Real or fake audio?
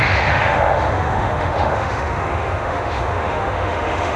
fake